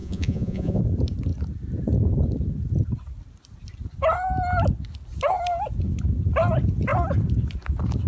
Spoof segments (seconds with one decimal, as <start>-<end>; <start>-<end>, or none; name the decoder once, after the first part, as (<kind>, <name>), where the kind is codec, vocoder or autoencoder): 0.0-0.8 (vocoder, Vocos)